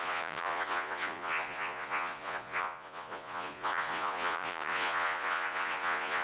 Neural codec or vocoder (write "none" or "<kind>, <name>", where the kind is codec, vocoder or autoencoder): vocoder, Vocos